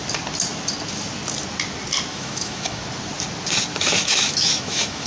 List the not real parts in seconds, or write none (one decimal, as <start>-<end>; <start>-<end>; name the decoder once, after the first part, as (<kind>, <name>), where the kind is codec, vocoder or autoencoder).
2.1-2.8 (autoencoder, DAC-VAE); 3.7-5.1